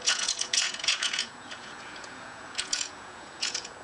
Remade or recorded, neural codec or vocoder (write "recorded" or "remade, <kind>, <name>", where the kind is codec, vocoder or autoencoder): remade, vocoder, Vocos